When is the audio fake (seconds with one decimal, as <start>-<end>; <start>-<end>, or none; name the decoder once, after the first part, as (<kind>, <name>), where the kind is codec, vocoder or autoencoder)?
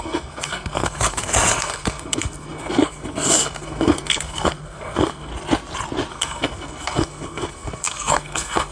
0.0-5.3 (codec, SNAC); 6.1-8.7